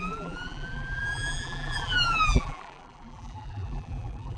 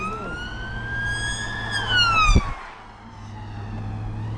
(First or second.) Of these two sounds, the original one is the second